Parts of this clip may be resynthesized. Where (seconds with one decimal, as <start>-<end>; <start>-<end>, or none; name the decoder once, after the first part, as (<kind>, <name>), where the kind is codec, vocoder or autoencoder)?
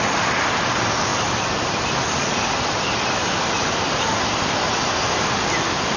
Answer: none